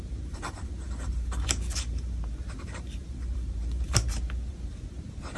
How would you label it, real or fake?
fake